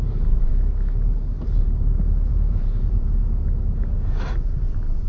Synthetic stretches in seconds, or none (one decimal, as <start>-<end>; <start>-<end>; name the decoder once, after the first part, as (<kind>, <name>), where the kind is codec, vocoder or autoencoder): 0.0-0.5 (vocoder, BigVGAN v2); 1.6-3.2; 4.4-5.1